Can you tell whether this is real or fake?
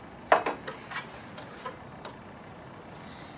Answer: real